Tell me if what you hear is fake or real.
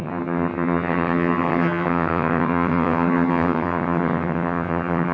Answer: fake